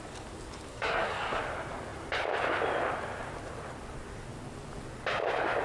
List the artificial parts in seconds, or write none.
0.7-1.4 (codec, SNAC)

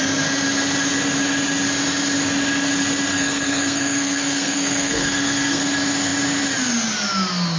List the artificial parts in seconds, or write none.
3.1-5.6 (codec, SNAC)

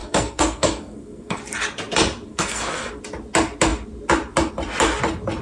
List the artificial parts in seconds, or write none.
0.0-1.4 (codec, SNAC); 2.3-3.0